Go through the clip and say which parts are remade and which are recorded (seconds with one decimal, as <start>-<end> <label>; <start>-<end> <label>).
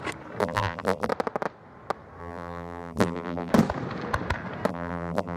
0.0-0.4 recorded; 0.4-1.1 remade; 1.1-2.2 recorded; 2.2-3.5 remade; 3.5-4.7 recorded; 4.7-5.4 remade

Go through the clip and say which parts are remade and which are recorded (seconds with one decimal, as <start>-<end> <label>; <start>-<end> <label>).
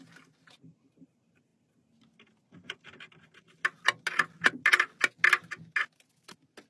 0.0-6.7 recorded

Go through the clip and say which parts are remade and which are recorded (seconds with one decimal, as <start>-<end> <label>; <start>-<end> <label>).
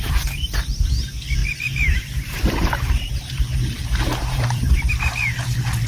0.0-1.4 recorded; 1.4-4.9 remade; 4.9-5.9 recorded